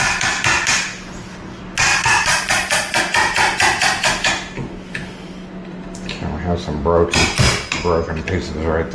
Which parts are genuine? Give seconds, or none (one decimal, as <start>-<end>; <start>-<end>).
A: 0.0-1.9; 3.0-8.9